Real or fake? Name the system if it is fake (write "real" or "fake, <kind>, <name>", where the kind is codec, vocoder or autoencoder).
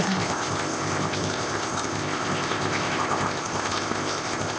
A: fake, codec, ZipCodec